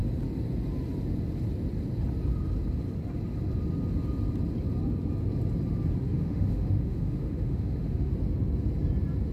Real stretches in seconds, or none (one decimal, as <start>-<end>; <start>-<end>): 0.0-6.0; 8.1-9.3